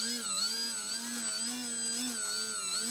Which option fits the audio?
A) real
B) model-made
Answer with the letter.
A